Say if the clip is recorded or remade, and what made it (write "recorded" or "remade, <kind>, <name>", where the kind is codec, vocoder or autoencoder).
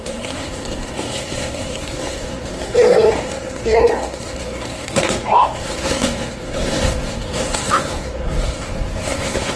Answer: remade, codec, SNAC